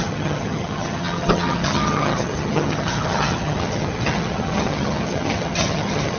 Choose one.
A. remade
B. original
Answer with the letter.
A